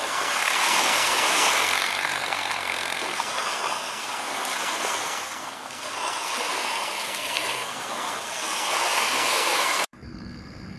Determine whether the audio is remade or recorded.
remade